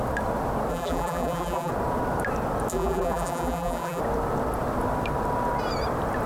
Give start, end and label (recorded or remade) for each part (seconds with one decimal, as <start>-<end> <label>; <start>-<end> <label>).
0.0-0.7 recorded; 0.7-1.7 remade; 1.7-2.7 recorded; 2.7-4.0 remade; 4.0-6.3 recorded